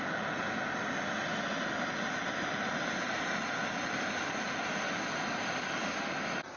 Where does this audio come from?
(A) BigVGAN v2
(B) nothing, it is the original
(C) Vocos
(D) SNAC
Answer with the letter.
B